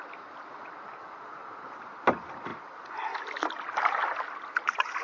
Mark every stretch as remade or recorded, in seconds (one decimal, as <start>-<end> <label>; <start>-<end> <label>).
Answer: 0.0-1.4 recorded; 1.4-1.9 remade; 1.9-5.0 recorded